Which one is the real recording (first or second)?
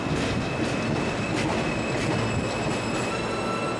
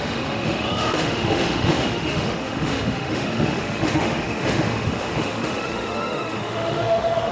first